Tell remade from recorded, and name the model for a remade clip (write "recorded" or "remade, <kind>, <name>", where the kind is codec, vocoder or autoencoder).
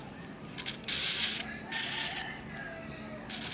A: recorded